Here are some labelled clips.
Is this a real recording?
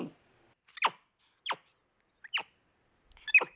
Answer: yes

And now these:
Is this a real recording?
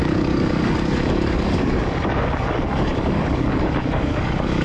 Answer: no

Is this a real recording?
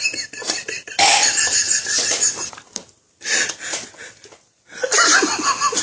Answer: yes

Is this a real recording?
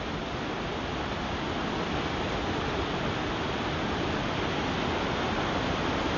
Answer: yes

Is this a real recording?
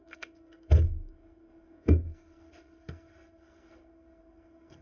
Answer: no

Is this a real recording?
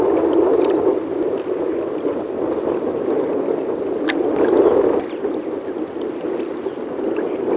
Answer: yes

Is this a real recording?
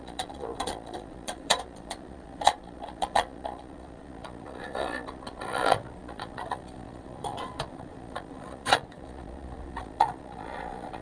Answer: no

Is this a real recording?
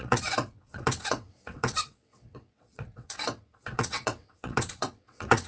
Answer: no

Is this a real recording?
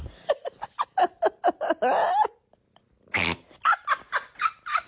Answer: yes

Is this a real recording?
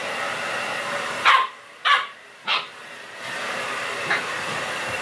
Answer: no